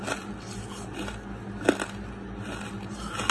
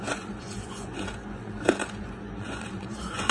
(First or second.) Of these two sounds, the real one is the first